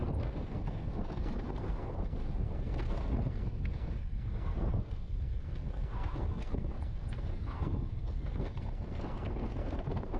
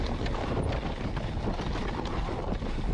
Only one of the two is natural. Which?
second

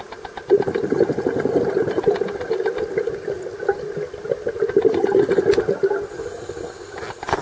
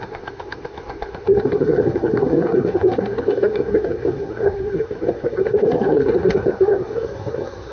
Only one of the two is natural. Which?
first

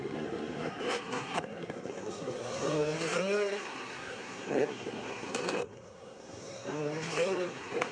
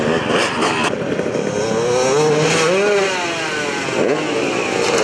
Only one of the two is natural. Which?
second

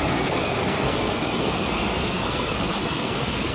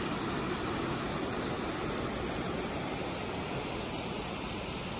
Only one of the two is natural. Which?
second